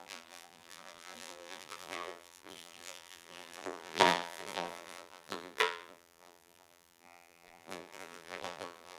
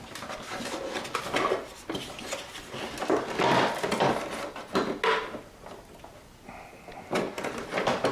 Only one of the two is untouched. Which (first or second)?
second